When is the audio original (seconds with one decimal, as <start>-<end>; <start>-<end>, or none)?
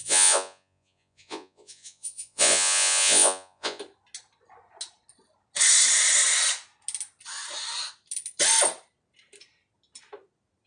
3.8-10.7